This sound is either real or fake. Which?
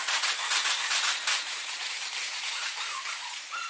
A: fake